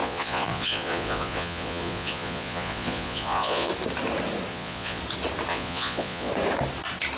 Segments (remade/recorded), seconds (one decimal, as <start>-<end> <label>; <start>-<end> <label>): 0.0-3.7 remade; 3.7-4.5 recorded; 4.5-5.0 remade; 5.0-5.5 recorded; 5.5-6.3 remade; 6.3-7.2 recorded